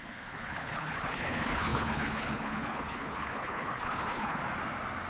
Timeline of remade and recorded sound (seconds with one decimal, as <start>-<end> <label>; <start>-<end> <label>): 0.0-4.4 remade; 4.4-5.1 recorded